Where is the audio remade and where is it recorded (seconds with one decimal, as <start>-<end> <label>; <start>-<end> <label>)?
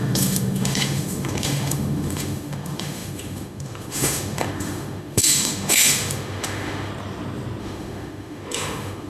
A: 0.0-6.9 remade; 6.9-7.6 recorded; 7.6-9.1 remade